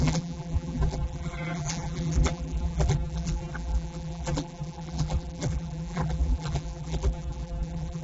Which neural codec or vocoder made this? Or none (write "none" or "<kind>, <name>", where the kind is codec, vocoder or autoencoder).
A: vocoder, BigVGAN v2